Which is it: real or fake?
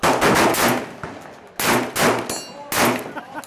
real